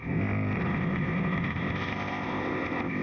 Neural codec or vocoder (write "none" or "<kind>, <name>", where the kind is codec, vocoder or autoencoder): codec, ZipCodec